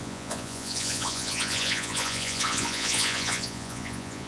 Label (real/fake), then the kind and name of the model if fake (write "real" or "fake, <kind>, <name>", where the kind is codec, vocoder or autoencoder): fake, vocoder, Vocos